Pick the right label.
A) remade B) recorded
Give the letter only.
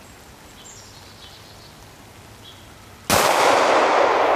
B